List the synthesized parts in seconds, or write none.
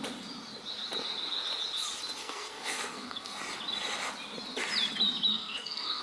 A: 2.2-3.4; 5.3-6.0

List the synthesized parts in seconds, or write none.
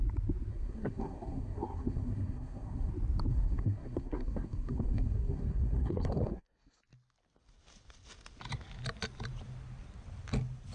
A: 0.5-2.9; 3.3-6.8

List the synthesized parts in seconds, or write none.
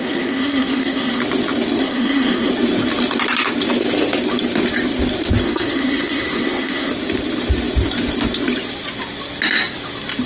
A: 0.0-1.2; 1.8-2.5; 5.4-6.9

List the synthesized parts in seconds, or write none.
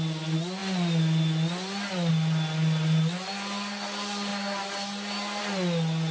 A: none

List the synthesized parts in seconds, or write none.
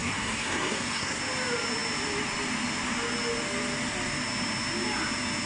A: 0.0-1.2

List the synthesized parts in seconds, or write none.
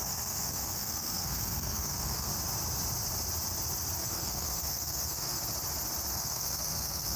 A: 0.0-2.3; 4.0-5.4; 6.1-7.2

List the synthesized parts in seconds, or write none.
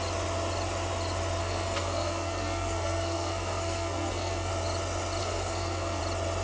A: 1.4-4.5; 5.2-6.0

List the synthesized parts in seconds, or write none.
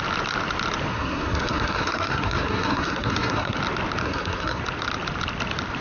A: 0.9-3.6; 4.0-4.6